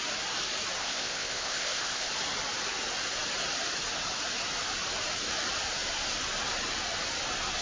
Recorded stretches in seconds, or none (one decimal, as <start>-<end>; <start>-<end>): 0.0-0.8; 2.1-7.6